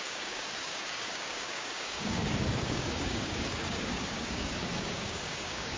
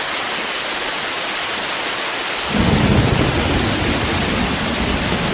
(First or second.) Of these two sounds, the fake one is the first